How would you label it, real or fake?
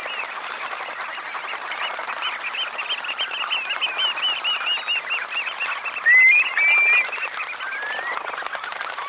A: real